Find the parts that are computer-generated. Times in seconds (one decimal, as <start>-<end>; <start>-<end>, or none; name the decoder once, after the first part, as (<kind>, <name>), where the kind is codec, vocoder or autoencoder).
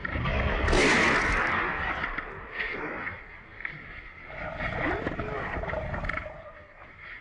1.2-7.2 (vocoder, BigVGAN v2)